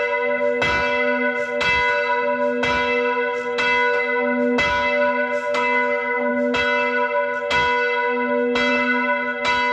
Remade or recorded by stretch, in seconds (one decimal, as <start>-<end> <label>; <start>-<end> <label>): 0.0-9.7 recorded